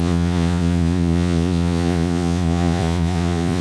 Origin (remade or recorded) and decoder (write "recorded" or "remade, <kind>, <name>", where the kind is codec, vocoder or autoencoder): remade, vocoder, Vocos